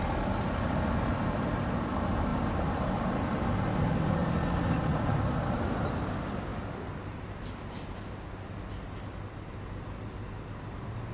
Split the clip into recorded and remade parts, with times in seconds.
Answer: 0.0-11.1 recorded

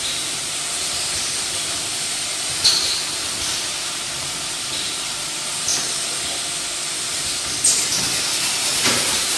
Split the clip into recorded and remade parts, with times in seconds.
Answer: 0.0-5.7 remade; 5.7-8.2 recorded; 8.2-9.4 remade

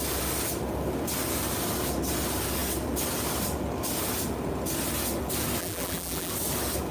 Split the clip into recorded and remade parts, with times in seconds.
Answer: 0.0-5.6 recorded; 5.6-6.3 remade; 6.3-6.9 recorded

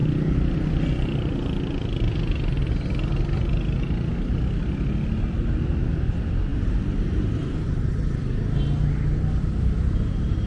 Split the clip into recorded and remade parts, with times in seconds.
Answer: 0.0-6.5 recorded; 6.5-7.9 remade; 7.9-10.5 recorded

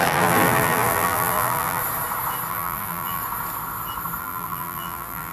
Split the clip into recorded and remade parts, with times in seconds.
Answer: 0.0-1.8 remade; 1.8-2.5 recorded; 2.5-3.2 remade; 3.2-4.2 recorded; 4.2-5.3 remade

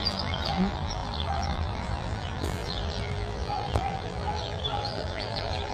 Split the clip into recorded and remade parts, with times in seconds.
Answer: 0.0-5.7 remade

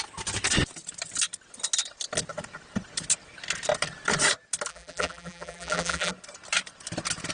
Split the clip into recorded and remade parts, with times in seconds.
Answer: 0.0-4.7 recorded; 4.7-6.1 remade; 6.1-7.3 recorded